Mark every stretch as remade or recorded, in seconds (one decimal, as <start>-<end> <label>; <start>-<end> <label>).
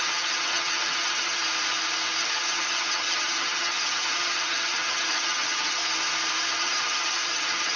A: 0.0-1.4 remade; 1.4-2.2 recorded; 2.2-5.8 remade; 5.8-6.6 recorded; 6.6-7.8 remade